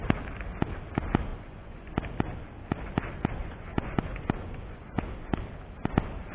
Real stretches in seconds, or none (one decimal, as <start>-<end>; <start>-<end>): 0.0-1.3; 1.9-3.4; 5.1-6.3